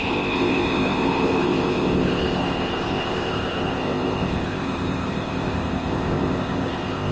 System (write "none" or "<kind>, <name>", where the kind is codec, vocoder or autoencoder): codec, ZipCodec